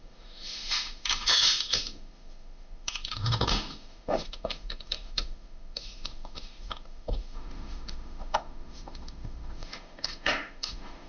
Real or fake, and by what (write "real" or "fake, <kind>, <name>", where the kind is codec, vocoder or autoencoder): fake, autoencoder, DAC-VAE